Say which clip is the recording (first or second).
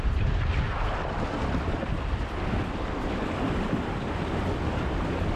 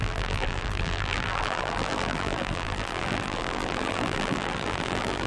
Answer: first